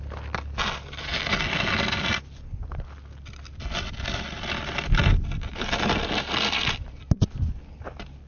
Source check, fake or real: real